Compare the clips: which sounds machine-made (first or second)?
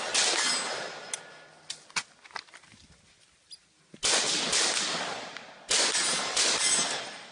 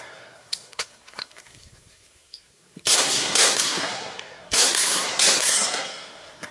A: second